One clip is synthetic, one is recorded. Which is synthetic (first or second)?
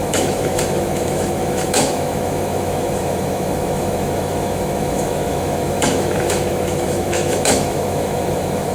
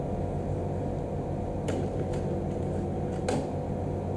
first